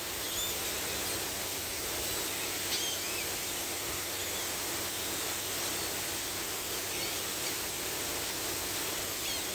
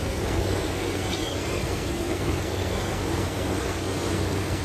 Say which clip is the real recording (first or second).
first